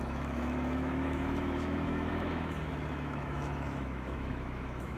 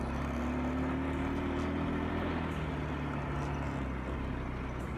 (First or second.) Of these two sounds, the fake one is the first